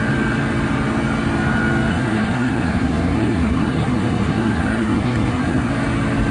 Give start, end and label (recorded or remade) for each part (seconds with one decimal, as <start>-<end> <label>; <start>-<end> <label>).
0.0-1.9 recorded; 1.9-5.7 remade; 5.7-6.3 recorded